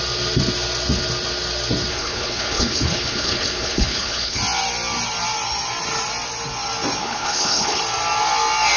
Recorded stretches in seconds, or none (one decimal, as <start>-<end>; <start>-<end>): 0.0-1.9; 4.4-7.0; 7.8-8.8